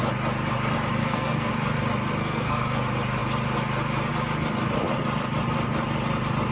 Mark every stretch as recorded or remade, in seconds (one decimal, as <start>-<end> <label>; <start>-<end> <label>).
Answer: 0.0-1.0 recorded; 1.0-1.5 remade; 1.5-2.2 recorded; 2.2-2.8 remade; 2.8-6.5 recorded